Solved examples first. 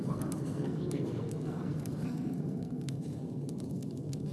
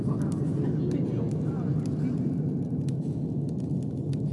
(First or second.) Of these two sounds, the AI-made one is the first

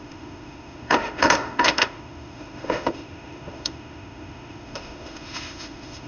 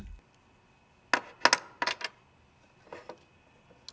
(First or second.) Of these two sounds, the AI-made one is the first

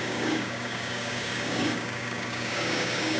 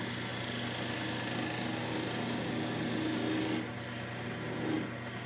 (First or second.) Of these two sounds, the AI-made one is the first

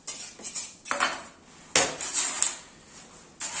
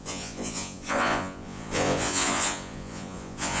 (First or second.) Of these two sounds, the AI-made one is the second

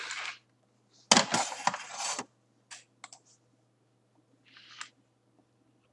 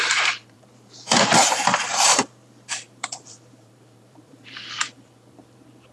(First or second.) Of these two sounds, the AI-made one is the second